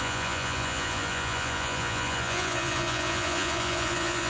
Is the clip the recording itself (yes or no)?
no